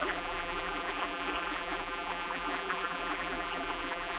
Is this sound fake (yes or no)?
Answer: yes